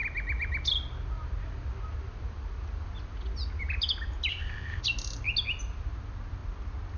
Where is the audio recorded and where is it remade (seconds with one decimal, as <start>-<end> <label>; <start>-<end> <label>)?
0.0-4.3 recorded; 4.3-4.8 remade; 4.8-7.0 recorded